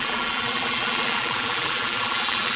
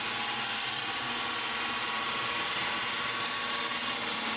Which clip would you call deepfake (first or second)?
first